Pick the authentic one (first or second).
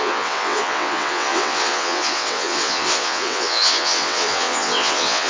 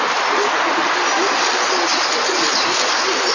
second